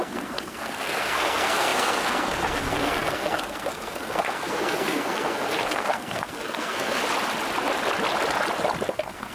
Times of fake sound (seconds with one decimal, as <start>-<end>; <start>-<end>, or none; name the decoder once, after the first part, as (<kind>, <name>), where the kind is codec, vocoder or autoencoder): 0.0-7.0 (codec, SNAC); 8.9-9.3